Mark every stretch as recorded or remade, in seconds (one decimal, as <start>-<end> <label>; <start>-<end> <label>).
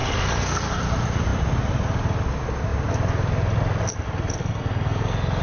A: 0.0-0.8 remade; 0.8-4.4 recorded; 4.4-5.4 remade